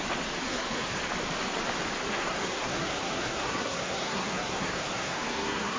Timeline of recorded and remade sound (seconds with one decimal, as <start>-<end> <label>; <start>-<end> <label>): 0.0-0.4 recorded; 0.4-1.0 remade; 1.0-2.1 recorded; 2.1-5.8 remade